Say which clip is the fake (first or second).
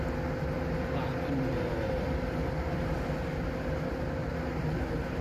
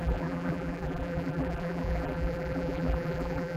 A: second